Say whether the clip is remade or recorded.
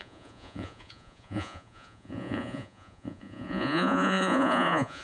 remade